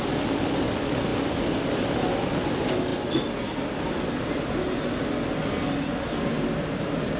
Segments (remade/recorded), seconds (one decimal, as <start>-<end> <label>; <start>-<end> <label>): 0.0-7.2 recorded